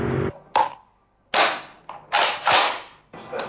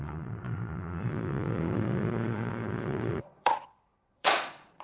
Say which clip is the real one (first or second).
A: first